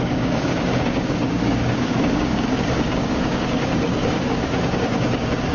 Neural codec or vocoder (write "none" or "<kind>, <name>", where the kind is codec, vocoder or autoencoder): codec, DAC